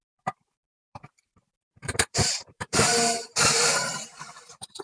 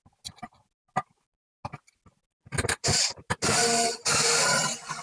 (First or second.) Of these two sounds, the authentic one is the second